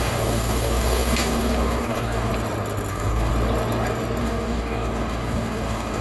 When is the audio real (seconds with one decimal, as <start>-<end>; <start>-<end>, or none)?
2.3-2.9; 3.3-4.2